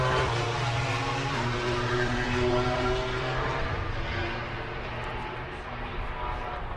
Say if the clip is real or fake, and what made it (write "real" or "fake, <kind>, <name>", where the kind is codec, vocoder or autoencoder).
fake, vocoder, BigVGAN v2